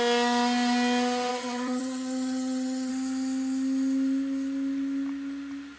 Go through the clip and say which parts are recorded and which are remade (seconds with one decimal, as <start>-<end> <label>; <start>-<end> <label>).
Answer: 0.0-1.3 recorded; 1.3-2.9 remade; 2.9-5.8 recorded